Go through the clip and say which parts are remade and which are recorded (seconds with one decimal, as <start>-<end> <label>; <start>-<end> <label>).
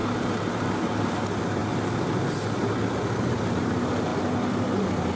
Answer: 0.0-0.5 recorded; 0.5-1.6 remade; 1.6-3.6 recorded; 3.6-4.1 remade; 4.1-5.2 recorded